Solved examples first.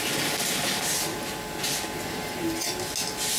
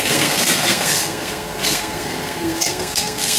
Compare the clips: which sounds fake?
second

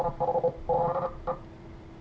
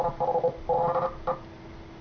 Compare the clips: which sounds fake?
first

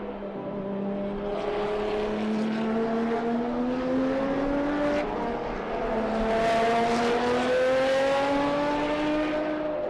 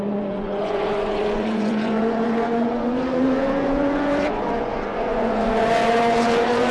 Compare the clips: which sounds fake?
second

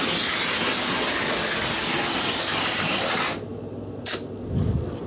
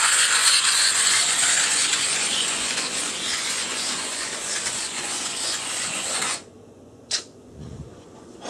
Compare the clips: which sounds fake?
second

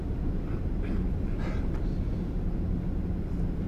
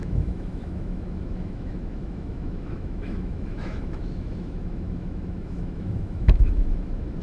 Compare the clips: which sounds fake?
second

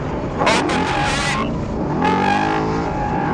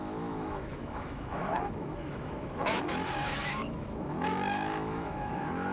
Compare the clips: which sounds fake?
second